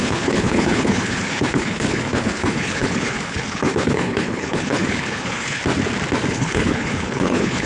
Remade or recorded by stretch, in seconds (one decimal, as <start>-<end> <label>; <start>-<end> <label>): 0.0-5.6 remade; 5.6-6.3 recorded; 6.3-7.7 remade